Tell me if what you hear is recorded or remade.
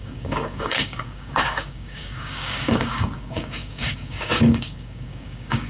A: remade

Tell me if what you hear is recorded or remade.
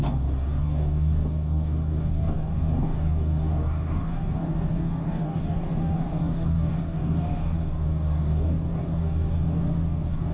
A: remade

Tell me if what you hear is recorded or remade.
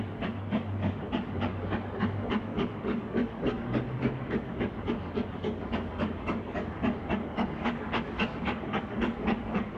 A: remade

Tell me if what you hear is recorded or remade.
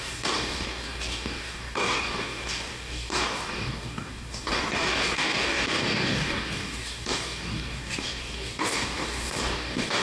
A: remade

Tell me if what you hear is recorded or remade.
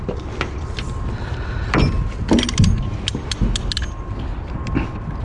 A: recorded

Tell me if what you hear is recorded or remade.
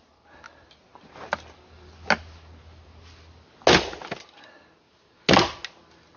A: recorded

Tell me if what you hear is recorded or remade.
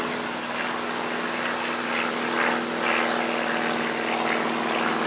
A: recorded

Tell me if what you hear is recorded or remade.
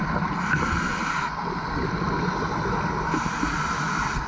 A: recorded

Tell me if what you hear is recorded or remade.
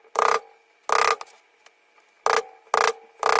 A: recorded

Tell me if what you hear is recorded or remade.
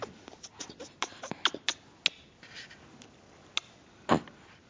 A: recorded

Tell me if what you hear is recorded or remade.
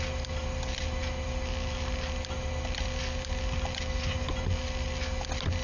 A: recorded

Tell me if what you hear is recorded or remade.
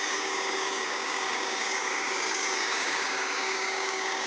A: remade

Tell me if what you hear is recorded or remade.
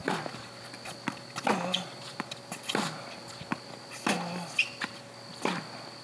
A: recorded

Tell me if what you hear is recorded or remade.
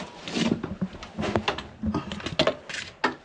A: recorded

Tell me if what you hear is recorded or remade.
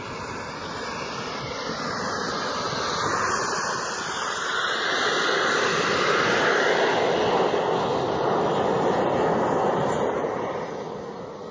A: recorded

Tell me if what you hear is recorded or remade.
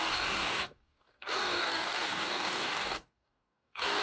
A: remade